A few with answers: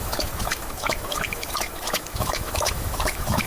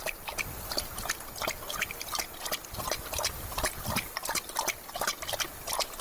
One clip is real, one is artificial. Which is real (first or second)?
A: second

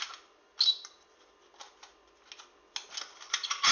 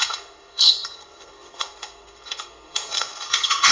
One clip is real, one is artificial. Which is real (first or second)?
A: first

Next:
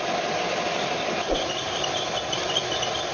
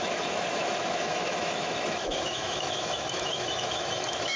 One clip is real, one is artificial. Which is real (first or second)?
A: first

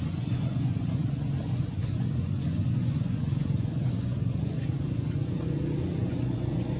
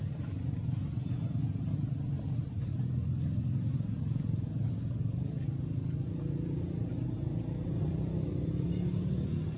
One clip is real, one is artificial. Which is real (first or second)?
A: second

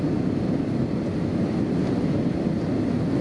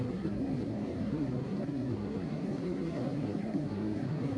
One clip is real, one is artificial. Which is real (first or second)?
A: first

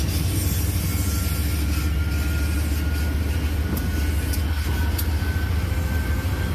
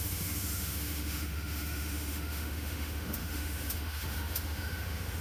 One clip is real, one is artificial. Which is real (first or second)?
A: first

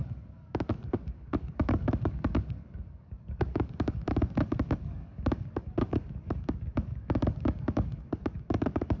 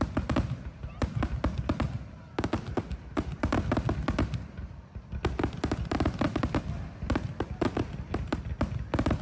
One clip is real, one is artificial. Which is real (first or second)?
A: second